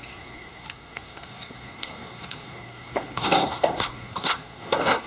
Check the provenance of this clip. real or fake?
fake